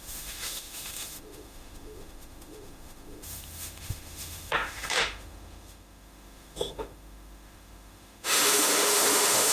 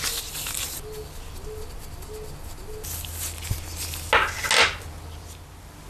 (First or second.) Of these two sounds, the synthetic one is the first